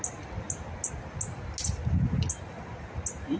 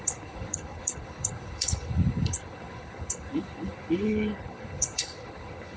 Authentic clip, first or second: first